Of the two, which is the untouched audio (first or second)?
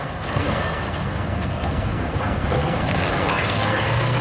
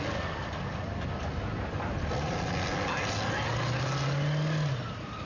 second